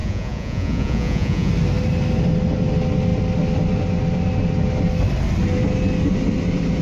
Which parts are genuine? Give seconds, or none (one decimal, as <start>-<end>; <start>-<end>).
1.5-6.8